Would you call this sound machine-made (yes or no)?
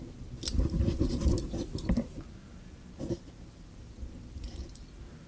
no